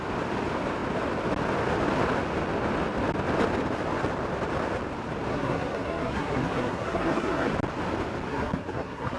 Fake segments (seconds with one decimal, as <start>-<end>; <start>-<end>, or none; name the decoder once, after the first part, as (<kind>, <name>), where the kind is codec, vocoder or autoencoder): 5.3-7.5 (codec, SNAC); 8.3-9.2